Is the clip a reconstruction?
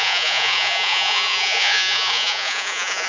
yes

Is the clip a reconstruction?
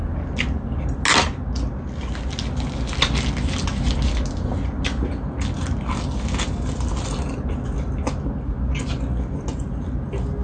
no